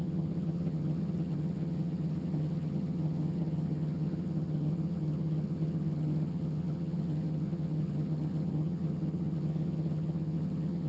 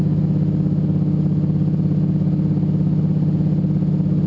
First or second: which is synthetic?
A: first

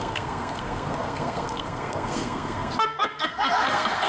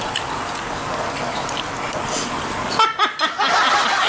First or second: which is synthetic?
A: first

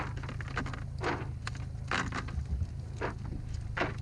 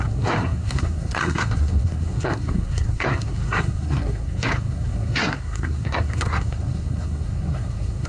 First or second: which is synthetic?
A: second